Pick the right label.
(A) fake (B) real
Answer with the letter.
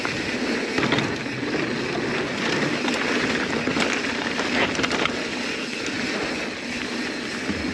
B